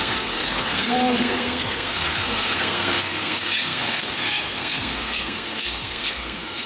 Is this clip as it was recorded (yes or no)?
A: no